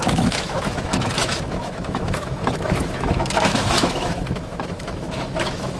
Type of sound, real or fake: fake